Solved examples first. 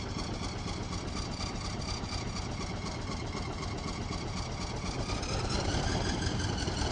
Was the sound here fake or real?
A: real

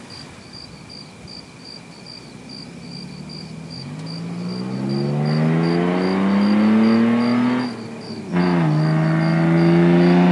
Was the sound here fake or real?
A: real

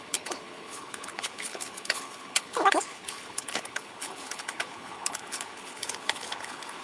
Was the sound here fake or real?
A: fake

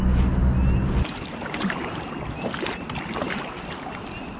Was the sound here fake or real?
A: real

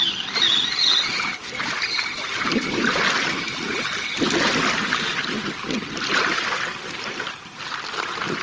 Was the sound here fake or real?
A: real